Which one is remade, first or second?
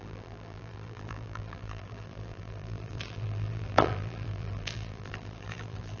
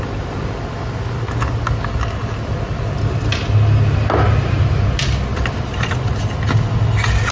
first